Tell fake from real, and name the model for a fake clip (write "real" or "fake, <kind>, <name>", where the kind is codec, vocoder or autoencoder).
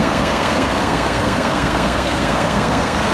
fake, codec, SNAC